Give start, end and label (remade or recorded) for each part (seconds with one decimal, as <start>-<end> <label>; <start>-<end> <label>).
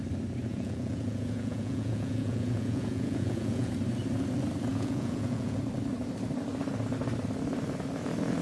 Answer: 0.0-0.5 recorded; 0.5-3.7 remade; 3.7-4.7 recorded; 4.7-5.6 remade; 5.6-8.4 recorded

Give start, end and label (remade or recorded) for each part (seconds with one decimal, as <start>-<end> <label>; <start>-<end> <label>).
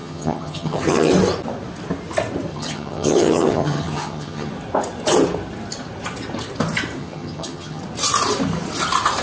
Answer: 0.0-1.1 remade; 1.1-2.5 recorded; 2.5-4.5 remade; 4.5-7.0 recorded; 7.0-7.8 remade; 7.8-9.2 recorded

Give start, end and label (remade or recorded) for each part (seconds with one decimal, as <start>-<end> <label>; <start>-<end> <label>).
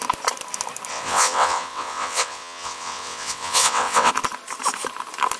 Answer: 0.0-0.9 recorded; 0.9-4.1 remade; 4.1-5.4 recorded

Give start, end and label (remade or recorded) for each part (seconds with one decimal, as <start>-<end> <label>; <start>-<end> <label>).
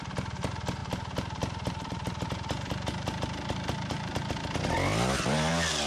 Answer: 0.0-0.8 recorded; 0.8-4.3 remade; 4.3-5.9 recorded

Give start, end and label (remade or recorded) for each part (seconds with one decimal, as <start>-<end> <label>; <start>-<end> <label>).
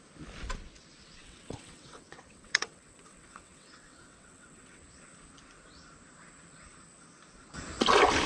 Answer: 0.0-1.2 recorded; 1.2-4.8 remade; 4.8-8.3 recorded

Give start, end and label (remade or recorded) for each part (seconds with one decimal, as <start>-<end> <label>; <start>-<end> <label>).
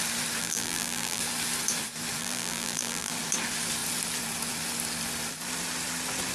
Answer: 0.0-0.4 recorded; 0.4-1.2 remade; 1.2-2.2 recorded; 2.2-3.1 remade; 3.1-6.3 recorded